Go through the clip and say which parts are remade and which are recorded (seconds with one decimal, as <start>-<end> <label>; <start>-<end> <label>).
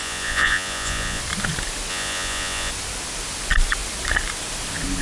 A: 0.0-1.2 remade; 1.2-1.9 recorded; 1.9-2.7 remade; 2.7-5.0 recorded